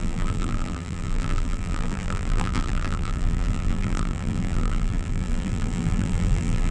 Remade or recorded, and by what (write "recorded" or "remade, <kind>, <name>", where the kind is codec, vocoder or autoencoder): remade, vocoder, BigVGAN v2